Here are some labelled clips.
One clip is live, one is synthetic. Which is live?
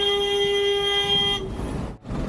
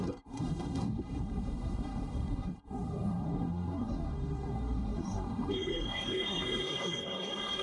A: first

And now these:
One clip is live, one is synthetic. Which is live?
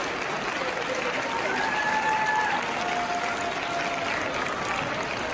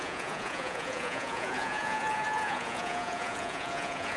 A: first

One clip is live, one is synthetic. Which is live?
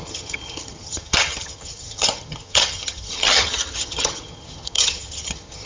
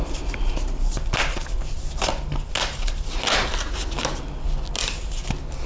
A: second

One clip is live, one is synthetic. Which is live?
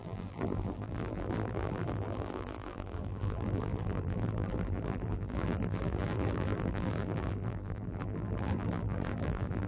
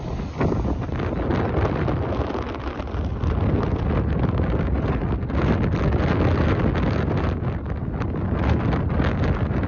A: second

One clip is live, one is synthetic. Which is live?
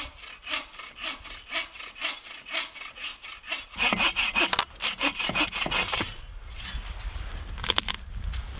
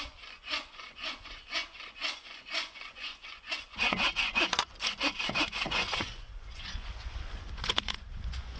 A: first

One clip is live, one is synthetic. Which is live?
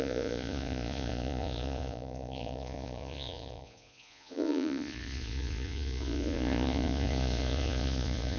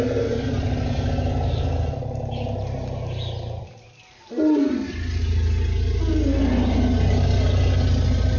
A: second